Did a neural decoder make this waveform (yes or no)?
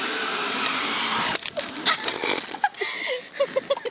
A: no